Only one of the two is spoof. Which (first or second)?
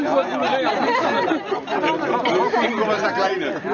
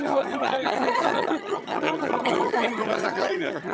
second